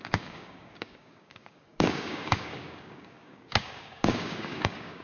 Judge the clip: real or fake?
fake